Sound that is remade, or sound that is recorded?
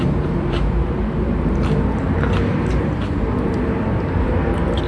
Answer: remade